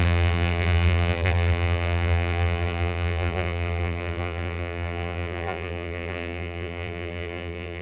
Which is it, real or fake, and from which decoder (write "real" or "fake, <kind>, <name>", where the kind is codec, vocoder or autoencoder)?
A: fake, vocoder, BigVGAN v2